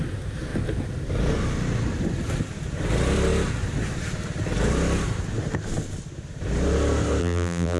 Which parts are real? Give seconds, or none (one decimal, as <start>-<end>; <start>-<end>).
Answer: 0.0-7.2